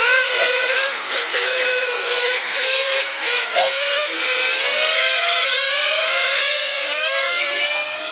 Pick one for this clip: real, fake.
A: fake